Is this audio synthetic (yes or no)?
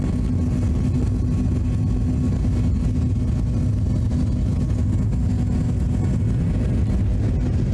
no